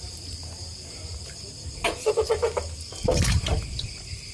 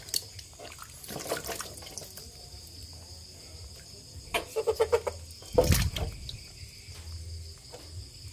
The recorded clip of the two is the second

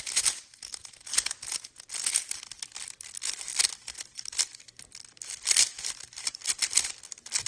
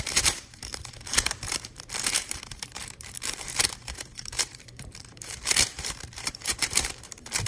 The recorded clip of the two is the first